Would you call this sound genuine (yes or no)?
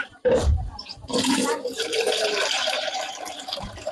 no